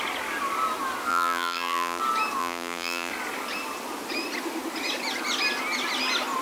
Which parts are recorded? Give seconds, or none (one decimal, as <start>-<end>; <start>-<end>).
0.0-1.1; 2.0-2.4; 3.1-6.4